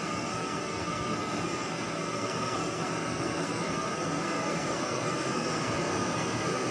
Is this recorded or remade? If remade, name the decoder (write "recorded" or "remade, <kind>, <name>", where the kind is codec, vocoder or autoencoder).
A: remade, codec, SNAC